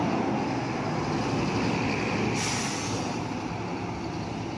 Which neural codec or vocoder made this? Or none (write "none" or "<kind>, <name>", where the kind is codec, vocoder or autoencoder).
none